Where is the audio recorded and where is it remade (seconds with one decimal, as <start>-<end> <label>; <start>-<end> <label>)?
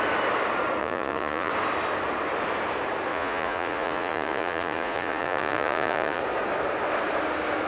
0.0-0.8 recorded; 0.8-1.5 remade; 1.5-3.1 recorded; 3.1-6.2 remade; 6.2-7.7 recorded